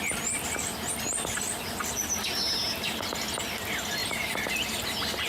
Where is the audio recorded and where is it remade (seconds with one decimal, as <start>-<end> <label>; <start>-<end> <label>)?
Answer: 0.0-5.3 recorded

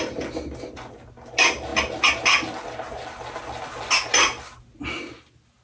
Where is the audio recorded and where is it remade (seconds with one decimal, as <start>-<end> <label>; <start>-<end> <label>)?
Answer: 0.0-5.6 recorded

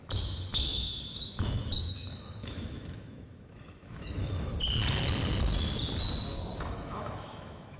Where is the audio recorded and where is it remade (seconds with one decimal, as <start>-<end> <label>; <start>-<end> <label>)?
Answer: 0.0-4.5 remade; 4.5-6.6 recorded; 6.6-7.8 remade